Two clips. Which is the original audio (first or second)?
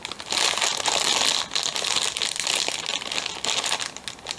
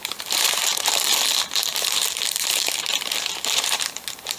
first